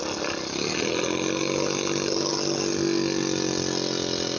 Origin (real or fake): real